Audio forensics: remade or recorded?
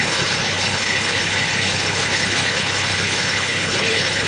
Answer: remade